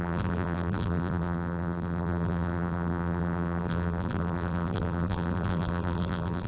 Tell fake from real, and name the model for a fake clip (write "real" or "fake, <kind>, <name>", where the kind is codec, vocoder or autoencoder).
fake, vocoder, BigVGAN v2